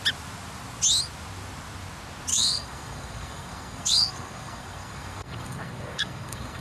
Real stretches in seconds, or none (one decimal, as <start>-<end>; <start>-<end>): 0.0-2.3